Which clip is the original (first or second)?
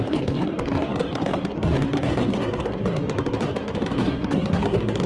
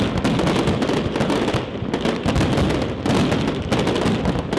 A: second